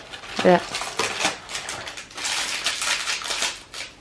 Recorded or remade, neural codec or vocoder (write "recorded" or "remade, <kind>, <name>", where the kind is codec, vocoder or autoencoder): recorded